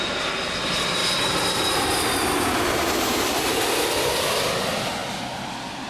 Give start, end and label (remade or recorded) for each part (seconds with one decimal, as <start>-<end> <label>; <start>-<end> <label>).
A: 0.0-5.0 remade; 5.0-5.9 recorded